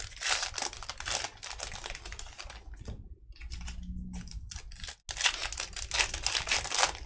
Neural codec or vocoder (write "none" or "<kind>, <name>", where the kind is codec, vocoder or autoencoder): none